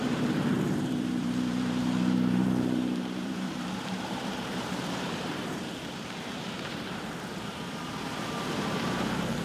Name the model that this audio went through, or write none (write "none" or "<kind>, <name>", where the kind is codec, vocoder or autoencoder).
vocoder, BigVGAN v2